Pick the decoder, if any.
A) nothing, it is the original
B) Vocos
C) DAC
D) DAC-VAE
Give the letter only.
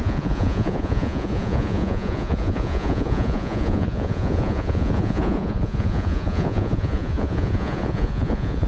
B